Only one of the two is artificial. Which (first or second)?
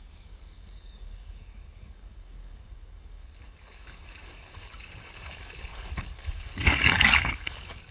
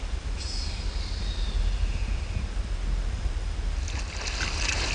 first